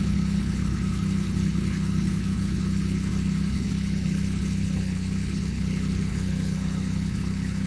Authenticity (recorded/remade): remade